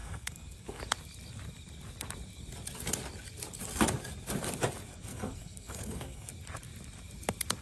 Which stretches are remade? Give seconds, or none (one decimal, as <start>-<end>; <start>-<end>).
0.0-0.8; 4.9-6.3